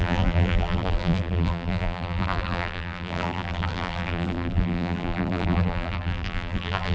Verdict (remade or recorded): remade